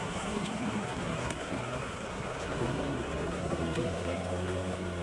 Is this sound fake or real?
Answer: fake